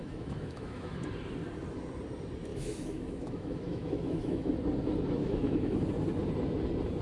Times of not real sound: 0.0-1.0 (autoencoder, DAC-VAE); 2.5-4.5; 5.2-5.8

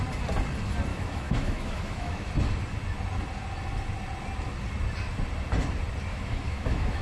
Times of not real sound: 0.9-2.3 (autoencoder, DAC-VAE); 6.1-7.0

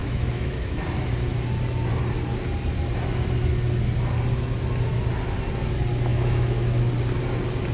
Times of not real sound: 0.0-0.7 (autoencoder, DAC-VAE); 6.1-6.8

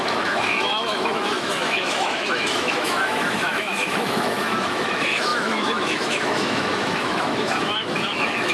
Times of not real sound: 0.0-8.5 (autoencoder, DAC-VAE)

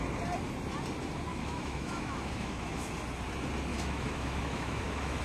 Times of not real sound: 1.3-2.9 (autoencoder, DAC-VAE); 3.7-5.2

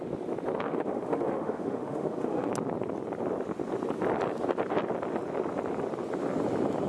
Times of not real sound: 0.7-2.5 (autoencoder, DAC-VAE)

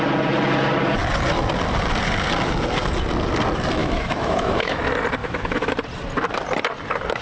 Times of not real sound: 3.8-4.8 (autoencoder, DAC-VAE); 5.2-5.7

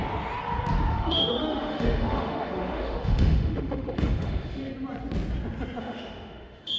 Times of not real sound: 0.9-4.7 (autoencoder, DAC-VAE); 5.8-6.8